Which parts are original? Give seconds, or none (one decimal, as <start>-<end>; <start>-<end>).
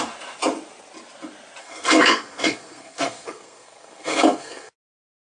0.0-1.6; 4.7-5.2